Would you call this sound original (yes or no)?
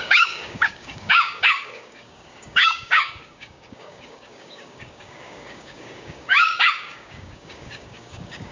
no